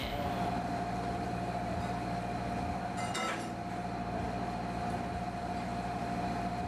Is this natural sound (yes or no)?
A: yes